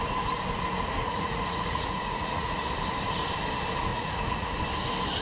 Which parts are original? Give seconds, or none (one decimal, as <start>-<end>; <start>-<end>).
0.0-1.0; 2.6-3.9; 4.5-5.2